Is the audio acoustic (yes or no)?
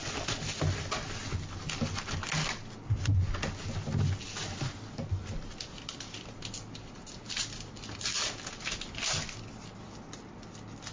yes